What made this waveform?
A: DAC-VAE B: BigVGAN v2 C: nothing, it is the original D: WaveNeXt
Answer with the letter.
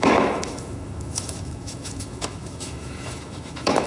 A